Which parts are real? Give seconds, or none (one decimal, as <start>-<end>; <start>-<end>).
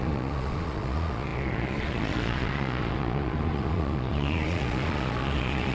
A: none